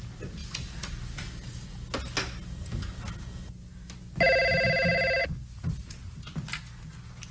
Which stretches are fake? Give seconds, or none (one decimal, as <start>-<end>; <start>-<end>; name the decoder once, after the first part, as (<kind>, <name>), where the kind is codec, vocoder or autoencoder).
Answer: none

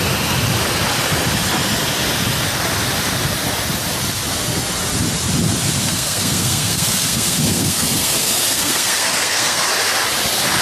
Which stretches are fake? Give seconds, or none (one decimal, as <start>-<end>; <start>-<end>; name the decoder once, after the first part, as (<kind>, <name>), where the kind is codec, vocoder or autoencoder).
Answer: 5.8-9.7 (codec, SNAC)

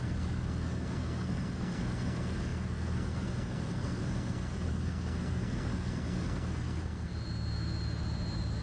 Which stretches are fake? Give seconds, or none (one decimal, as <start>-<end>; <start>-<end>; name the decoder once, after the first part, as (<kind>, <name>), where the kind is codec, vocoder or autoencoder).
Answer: 0.0-7.1 (codec, SNAC)